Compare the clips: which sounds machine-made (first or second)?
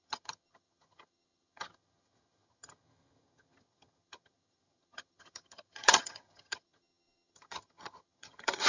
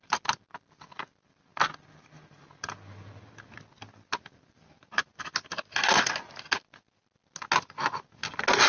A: first